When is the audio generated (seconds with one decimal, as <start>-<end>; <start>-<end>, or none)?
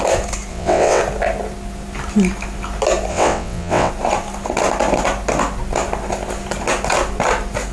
0.5-1.0; 3.1-3.9